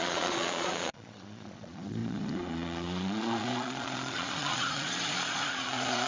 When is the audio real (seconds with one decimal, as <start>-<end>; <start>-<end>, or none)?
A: none

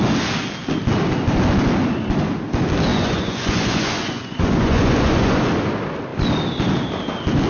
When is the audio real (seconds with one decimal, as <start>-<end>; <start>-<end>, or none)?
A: 0.0-2.9; 5.4-7.5